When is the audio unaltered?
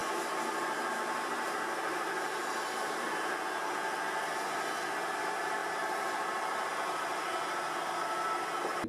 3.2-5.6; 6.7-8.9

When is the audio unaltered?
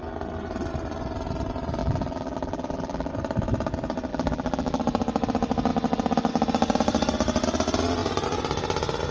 0.0-1.8; 3.1-4.1; 4.8-9.1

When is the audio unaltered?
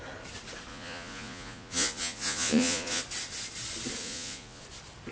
0.0-0.7; 3.0-4.0; 4.6-5.1